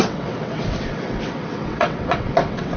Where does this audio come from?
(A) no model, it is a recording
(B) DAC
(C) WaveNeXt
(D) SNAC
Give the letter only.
C